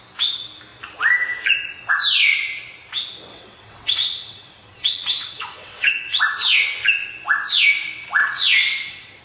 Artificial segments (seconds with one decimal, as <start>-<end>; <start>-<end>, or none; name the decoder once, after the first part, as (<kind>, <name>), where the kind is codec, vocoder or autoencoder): 3.3-6.2 (vocoder, WaveNeXt); 8.2-9.2